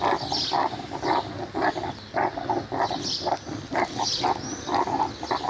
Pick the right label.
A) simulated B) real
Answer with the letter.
B